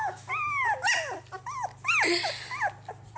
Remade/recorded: recorded